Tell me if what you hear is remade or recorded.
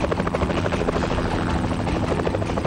recorded